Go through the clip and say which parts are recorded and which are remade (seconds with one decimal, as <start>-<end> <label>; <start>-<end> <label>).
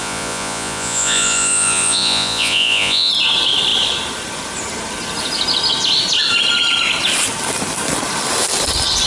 0.0-3.1 remade; 3.1-9.1 recorded